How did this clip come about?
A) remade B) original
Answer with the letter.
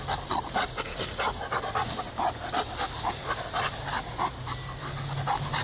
B